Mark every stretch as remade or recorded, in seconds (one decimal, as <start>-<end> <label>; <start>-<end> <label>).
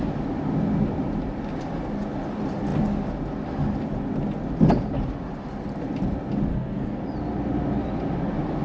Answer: 0.0-6.5 recorded; 6.5-7.0 remade; 7.0-8.6 recorded